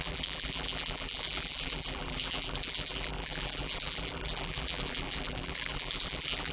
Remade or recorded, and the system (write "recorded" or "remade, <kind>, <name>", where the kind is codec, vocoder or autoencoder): remade, vocoder, BigVGAN v2